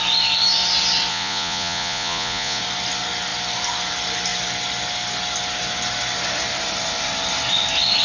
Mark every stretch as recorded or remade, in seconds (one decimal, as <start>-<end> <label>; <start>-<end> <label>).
0.0-1.1 recorded; 1.1-2.6 remade; 2.6-8.0 recorded